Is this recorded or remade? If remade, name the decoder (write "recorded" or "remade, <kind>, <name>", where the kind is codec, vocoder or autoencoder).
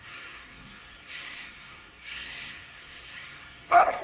remade, codec, SNAC